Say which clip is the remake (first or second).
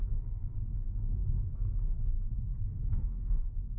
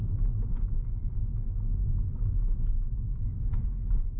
first